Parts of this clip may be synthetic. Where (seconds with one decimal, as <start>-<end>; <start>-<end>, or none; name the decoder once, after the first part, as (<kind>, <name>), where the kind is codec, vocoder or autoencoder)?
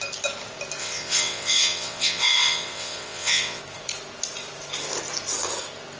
0.8-3.6 (vocoder, WaveNeXt)